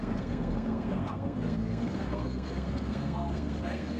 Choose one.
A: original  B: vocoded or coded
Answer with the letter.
B